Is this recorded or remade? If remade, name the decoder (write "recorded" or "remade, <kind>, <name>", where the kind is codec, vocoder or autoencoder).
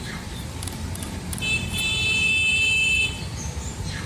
remade, vocoder, BigVGAN v2